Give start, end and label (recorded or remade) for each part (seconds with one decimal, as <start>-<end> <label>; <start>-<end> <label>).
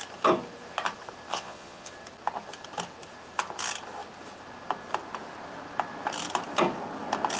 0.0-1.3 recorded; 1.3-1.9 remade; 1.9-7.4 recorded